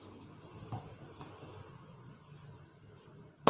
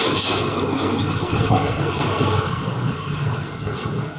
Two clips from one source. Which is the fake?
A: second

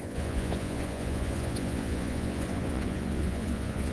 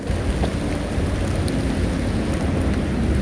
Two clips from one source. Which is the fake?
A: first